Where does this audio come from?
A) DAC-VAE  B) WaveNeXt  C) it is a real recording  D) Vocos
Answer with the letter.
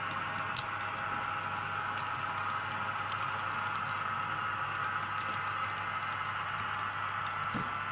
C